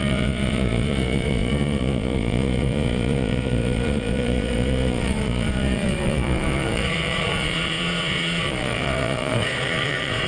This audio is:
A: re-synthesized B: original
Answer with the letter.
A